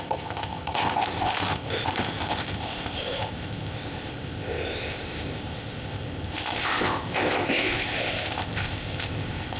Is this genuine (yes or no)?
no